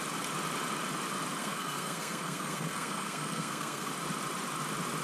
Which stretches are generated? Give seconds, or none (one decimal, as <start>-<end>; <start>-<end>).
1.4-3.9